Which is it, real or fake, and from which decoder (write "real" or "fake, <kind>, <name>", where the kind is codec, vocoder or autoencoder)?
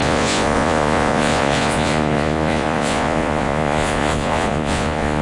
fake, vocoder, Vocos